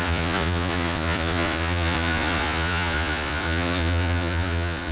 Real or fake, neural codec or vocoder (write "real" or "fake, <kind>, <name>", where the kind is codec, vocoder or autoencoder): fake, vocoder, Vocos